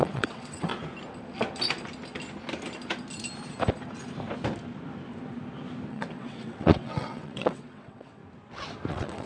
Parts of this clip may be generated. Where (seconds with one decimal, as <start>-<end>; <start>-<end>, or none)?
0.0-0.7; 5.9-8.2; 8.9-9.3